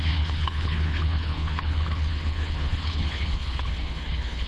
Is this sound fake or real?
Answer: fake